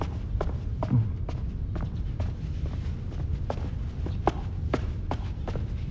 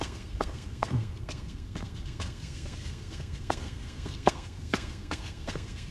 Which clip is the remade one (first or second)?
second